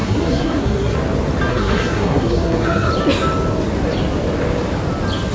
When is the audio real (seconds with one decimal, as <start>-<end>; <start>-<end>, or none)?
1.0-1.5; 2.9-5.3